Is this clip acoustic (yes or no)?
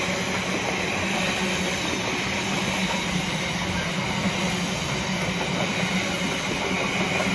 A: yes